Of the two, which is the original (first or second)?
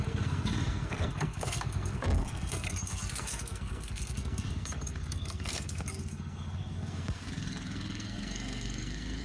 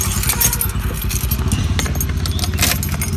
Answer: second